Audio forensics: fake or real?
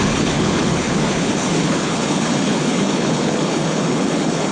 fake